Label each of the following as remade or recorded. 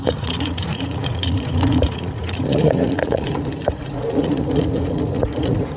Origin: remade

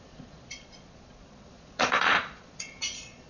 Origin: remade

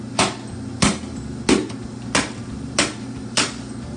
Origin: recorded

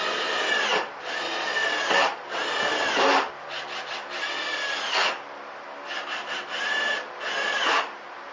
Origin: recorded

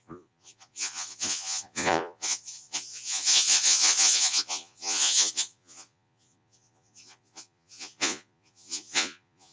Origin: remade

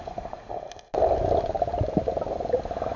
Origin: recorded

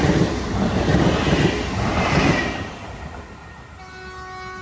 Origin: recorded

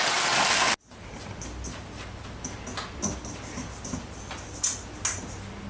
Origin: recorded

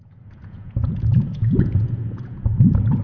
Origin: remade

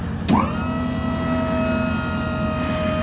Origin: recorded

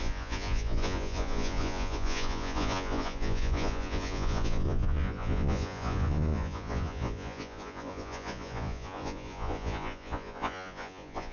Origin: remade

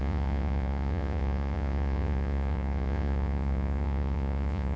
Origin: remade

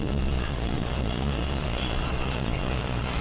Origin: remade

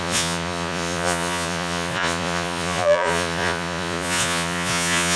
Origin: remade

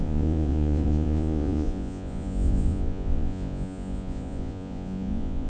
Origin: remade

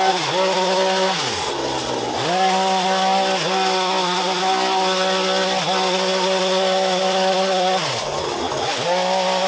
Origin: recorded